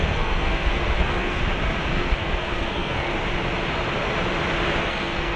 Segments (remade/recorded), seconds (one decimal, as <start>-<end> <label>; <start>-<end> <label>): 0.0-1.4 remade; 1.4-1.9 recorded; 1.9-3.1 remade; 3.1-4.8 recorded; 4.8-5.4 remade